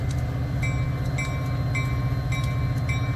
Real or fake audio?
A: real